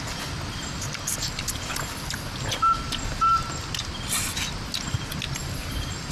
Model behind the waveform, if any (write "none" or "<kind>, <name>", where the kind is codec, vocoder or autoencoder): none